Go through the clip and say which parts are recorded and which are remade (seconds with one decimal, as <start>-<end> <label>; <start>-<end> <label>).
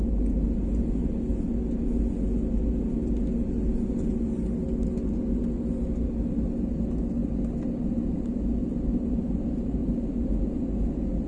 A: 0.0-9.8 recorded; 9.8-10.4 remade; 10.4-11.3 recorded